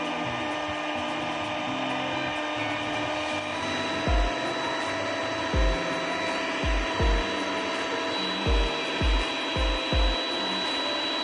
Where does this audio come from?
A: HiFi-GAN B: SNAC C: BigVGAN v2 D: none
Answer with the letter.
D